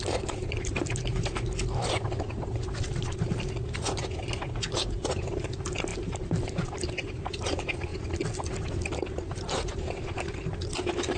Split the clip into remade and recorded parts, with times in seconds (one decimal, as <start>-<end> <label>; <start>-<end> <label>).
0.0-11.2 recorded